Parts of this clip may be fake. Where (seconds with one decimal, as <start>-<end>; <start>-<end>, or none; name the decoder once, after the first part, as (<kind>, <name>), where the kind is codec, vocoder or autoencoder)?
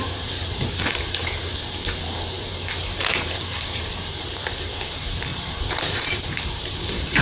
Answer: 0.0-7.2 (vocoder, BigVGAN v2)